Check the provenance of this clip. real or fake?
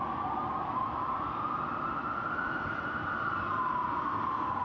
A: real